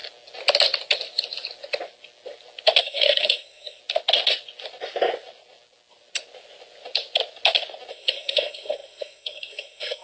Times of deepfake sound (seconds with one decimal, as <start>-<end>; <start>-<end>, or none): 2.8-3.8; 7.9-10.0